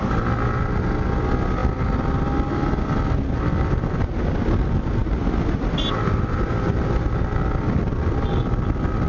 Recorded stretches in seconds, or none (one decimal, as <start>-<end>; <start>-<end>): 0.0-9.1